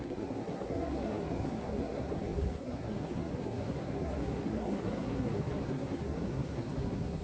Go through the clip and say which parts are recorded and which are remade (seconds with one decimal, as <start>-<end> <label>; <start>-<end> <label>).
0.0-7.2 remade